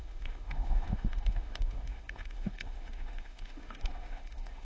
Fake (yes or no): yes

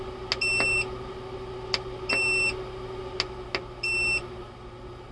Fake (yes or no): no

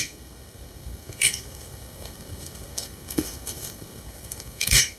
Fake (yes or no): yes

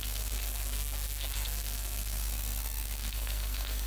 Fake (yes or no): yes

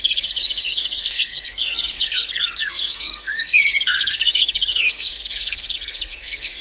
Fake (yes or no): yes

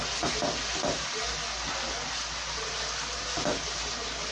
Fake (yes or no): no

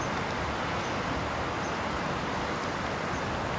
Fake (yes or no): no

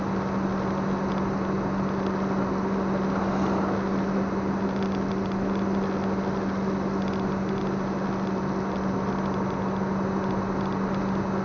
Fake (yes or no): no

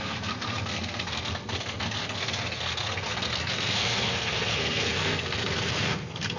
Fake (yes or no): yes